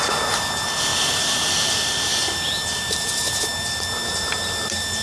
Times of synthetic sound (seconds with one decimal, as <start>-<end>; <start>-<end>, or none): 0.0-5.0